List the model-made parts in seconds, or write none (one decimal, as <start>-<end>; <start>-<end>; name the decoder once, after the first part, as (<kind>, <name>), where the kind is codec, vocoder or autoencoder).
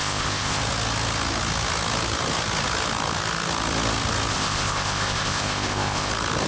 0.0-0.6 (codec, ZipCodec); 4.3-6.1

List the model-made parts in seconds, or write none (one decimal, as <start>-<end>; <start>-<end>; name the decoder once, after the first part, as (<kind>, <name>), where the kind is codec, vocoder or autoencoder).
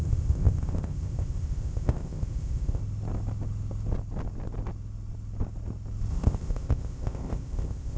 0.0-2.8 (codec, ZipCodec); 6.1-8.0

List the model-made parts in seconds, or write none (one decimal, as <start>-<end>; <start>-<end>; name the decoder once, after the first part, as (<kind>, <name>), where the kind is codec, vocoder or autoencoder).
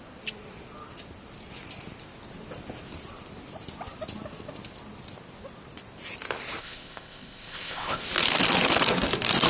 6.6-8.0 (codec, ZipCodec)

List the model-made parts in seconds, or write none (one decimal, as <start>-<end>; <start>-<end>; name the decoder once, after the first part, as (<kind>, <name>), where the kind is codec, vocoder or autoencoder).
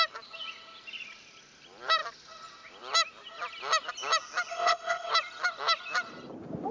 4.5-5.1 (codec, ZipCodec)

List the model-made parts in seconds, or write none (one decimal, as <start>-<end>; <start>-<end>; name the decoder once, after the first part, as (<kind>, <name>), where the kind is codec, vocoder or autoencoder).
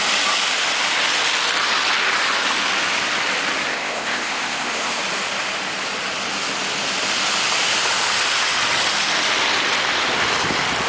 3.7-5.0 (codec, ZipCodec)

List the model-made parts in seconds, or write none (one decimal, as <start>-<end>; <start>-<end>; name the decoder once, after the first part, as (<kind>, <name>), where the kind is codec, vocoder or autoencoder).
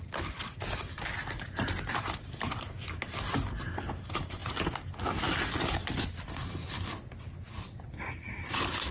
none